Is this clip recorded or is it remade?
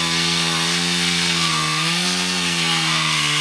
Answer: remade